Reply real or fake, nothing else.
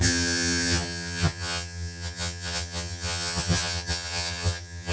fake